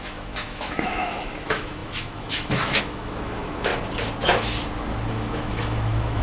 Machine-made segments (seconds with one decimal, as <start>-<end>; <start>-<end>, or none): 0.0-3.7; 5.1-6.2